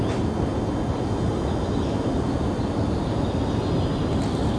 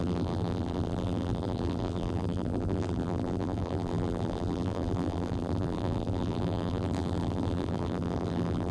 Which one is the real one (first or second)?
first